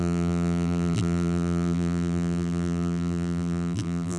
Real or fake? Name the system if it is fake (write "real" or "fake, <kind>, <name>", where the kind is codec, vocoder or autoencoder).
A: fake, vocoder, BigVGAN v2